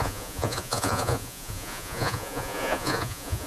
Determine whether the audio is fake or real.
fake